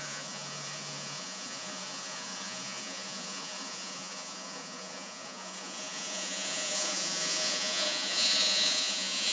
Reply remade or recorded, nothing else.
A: remade